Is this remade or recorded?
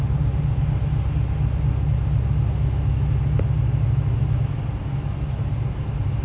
recorded